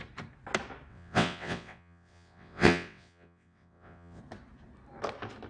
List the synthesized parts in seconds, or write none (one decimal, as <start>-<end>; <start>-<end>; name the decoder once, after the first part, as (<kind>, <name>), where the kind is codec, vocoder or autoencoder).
0.9-4.2 (vocoder, WaveNeXt)